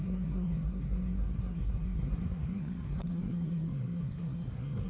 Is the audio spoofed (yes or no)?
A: yes